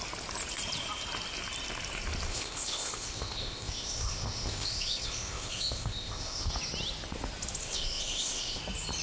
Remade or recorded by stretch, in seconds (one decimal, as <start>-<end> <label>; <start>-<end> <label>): 0.0-2.3 recorded; 2.3-6.5 remade; 6.5-7.6 recorded; 7.6-8.6 remade; 8.6-9.0 recorded

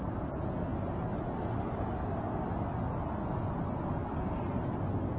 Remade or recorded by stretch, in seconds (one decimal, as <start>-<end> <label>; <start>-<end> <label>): 0.0-5.2 recorded

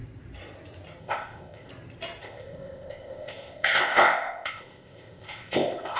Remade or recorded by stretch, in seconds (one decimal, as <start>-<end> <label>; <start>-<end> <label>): 0.0-1.0 recorded; 1.0-1.7 remade; 1.7-2.2 recorded; 2.2-6.0 remade

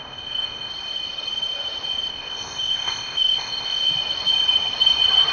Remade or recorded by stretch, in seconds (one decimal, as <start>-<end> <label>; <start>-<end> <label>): 0.0-0.7 remade; 0.7-2.1 recorded; 2.1-3.9 remade; 3.9-5.3 recorded

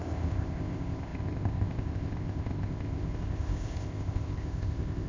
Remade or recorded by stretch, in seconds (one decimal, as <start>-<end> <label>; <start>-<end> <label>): 0.0-5.1 remade

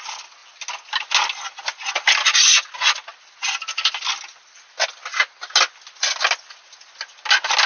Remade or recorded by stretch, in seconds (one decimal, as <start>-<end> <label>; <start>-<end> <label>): 0.0-7.7 recorded

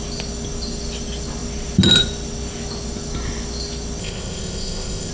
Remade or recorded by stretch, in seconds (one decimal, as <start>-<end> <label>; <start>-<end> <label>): 0.0-4.0 recorded; 4.0-5.1 remade